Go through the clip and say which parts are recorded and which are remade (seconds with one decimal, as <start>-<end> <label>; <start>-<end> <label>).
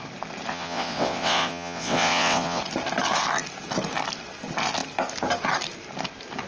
0.0-0.5 recorded; 0.5-2.6 remade; 2.6-6.5 recorded